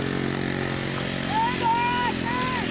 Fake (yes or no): no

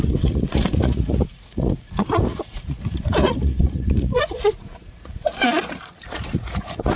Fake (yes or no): yes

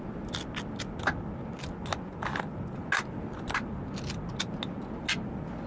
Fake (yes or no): no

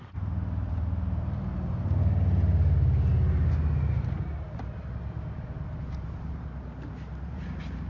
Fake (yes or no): no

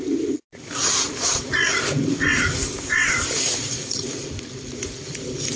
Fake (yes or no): no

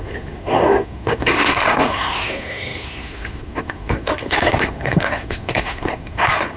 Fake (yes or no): yes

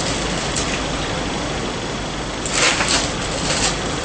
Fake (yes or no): no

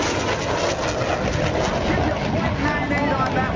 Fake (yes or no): no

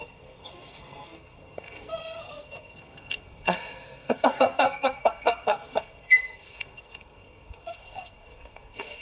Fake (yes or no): yes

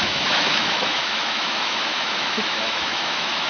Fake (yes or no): yes